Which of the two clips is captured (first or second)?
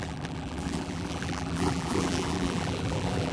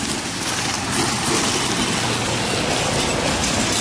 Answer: second